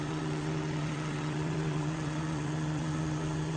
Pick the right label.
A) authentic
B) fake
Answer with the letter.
B